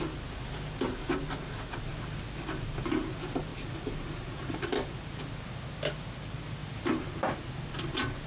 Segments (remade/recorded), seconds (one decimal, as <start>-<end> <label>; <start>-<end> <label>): 0.0-3.5 recorded; 3.5-5.2 remade; 5.2-6.6 recorded; 6.6-7.7 remade; 7.7-8.3 recorded